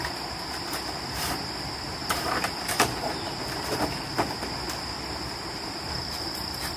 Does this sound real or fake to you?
fake